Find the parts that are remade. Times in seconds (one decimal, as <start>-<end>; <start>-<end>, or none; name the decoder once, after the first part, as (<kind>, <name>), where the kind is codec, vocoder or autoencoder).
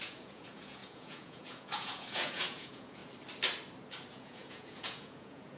0.0-3.0 (vocoder, Vocos); 4.1-5.6